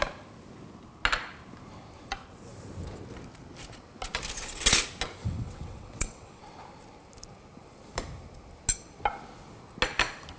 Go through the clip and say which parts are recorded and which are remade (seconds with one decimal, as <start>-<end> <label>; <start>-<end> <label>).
0.0-5.2 recorded; 5.2-6.4 remade; 6.4-10.4 recorded